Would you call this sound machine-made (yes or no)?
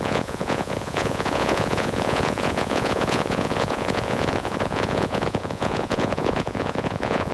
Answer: yes